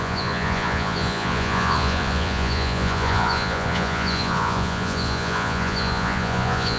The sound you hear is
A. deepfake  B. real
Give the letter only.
A